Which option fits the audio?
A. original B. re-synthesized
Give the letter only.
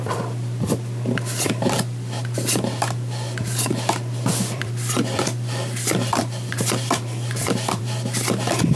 B